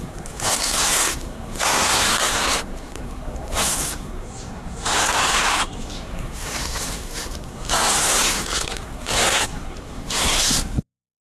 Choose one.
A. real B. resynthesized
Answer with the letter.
B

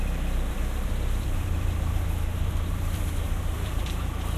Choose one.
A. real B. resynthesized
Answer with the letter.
B